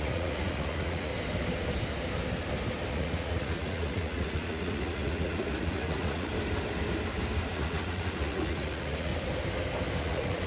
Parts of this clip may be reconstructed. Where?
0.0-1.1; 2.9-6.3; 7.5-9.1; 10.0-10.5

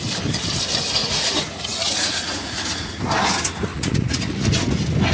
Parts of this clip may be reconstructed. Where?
1.0-3.0; 3.7-4.5

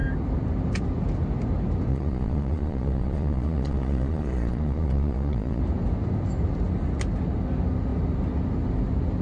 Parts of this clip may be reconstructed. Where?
1.9-5.6

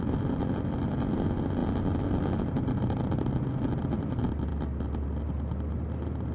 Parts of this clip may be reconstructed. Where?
none

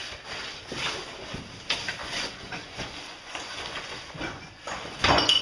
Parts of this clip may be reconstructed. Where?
2.0-5.4

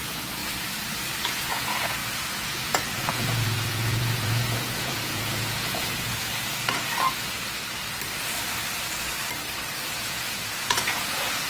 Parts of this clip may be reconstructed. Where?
0.0-0.4; 1.4-6.3; 10.0-11.5

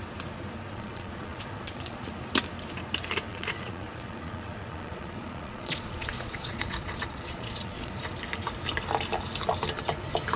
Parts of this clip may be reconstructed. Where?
0.7-2.1; 3.3-7.9

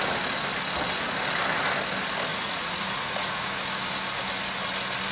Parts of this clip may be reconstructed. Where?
2.3-3.5